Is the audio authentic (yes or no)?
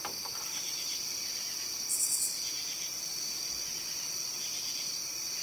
yes